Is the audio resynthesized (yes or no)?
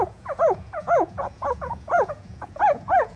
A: yes